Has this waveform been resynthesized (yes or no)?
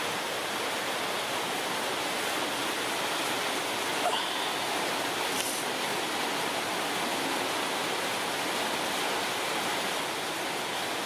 no